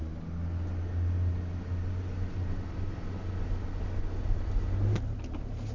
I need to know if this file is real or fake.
real